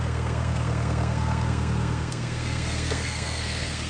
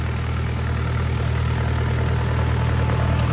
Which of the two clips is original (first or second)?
second